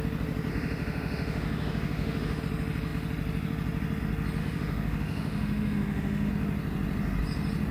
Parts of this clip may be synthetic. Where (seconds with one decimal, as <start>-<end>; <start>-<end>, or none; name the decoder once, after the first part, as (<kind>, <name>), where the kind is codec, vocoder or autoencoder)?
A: 0.5-2.4 (autoencoder, DAC-VAE); 4.4-6.3